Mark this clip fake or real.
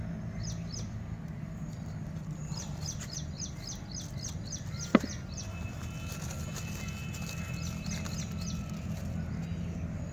real